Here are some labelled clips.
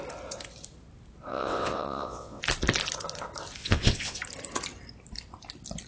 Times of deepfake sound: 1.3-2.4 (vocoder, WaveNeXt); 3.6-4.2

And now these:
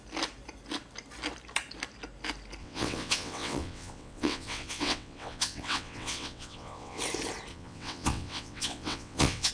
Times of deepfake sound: 2.6-7.0 (vocoder, WaveNeXt); 7.5-9.5

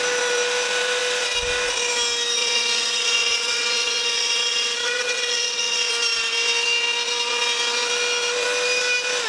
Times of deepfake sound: 2.4-5.9 (vocoder, WaveNeXt)

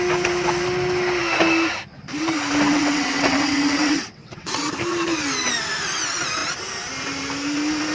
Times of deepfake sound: 2.7-4.7 (vocoder, WaveNeXt)